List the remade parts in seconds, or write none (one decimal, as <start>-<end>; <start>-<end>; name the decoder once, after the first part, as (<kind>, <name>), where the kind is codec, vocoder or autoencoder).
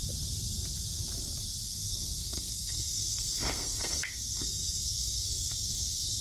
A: 1.6-6.2 (codec, SNAC)